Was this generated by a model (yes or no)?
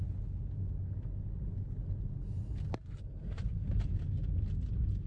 no